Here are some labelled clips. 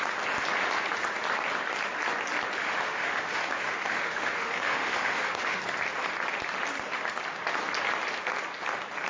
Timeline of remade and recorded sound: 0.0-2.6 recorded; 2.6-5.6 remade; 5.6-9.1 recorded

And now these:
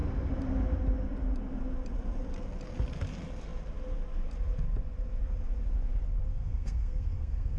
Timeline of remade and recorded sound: 0.0-6.3 recorded; 6.3-7.6 remade

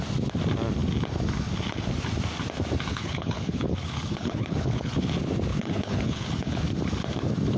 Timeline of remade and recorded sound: 0.0-2.9 recorded; 2.9-4.9 remade; 4.9-5.5 recorded; 5.5-6.6 remade; 6.6-7.6 recorded

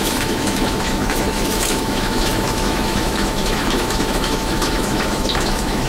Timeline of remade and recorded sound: 0.0-5.9 remade